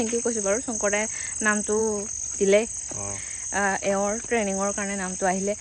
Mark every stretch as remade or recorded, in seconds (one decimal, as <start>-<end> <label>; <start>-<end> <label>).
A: 0.0-5.6 recorded